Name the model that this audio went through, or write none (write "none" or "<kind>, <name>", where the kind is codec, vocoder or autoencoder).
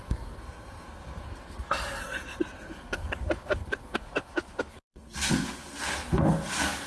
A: codec, SNAC